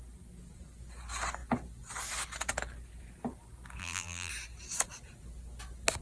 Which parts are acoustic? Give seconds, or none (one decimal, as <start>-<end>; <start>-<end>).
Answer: 0.0-3.8; 4.3-6.0